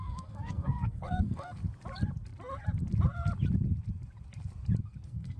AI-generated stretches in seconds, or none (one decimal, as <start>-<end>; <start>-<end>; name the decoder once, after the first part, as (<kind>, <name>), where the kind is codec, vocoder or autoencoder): 0.0-1.6 (codec, SNAC); 4.8-5.4